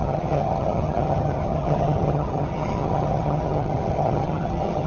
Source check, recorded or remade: remade